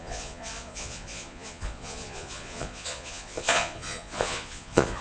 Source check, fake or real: fake